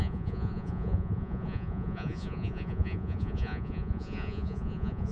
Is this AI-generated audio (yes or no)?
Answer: yes